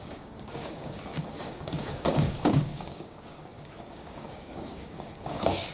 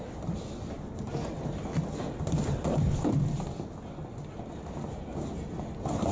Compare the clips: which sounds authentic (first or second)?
second